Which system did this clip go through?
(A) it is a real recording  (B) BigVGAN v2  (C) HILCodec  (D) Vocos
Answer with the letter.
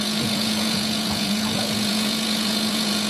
D